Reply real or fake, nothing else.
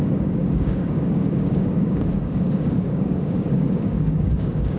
fake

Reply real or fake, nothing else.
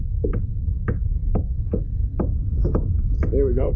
real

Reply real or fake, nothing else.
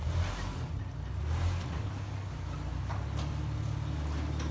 real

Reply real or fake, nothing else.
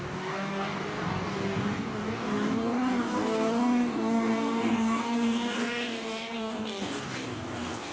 fake